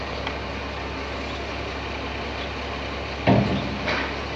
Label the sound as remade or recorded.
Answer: recorded